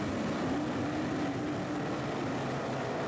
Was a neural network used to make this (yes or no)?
no